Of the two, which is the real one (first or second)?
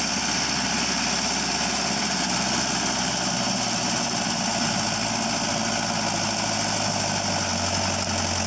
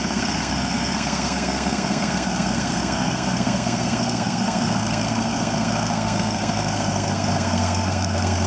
first